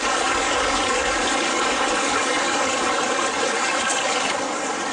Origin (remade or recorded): remade